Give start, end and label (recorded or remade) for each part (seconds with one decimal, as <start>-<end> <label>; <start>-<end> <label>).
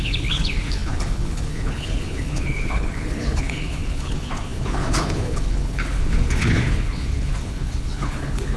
0.0-8.6 remade